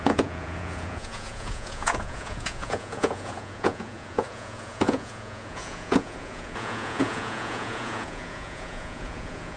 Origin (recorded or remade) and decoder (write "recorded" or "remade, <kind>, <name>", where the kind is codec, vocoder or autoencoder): remade, vocoder, Vocos